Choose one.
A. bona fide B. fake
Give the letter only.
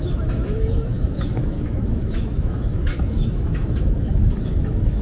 B